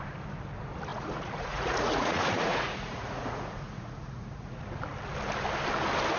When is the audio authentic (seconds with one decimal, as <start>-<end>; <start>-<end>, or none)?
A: 0.0-0.9; 4.6-6.2